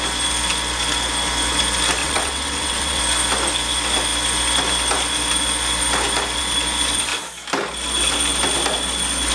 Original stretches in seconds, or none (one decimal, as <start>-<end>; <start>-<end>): 0.0-2.0; 3.0-9.3